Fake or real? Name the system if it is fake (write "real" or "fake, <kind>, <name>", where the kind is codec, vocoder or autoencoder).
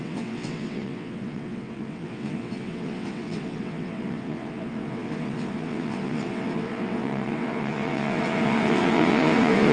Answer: fake, vocoder, WaveNeXt